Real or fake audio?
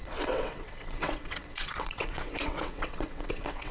fake